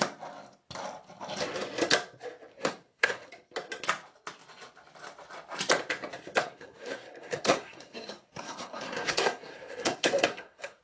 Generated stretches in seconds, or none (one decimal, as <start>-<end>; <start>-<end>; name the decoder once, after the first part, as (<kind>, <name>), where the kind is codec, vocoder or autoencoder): 2.5-3.3 (codec, SNAC); 6.4-10.8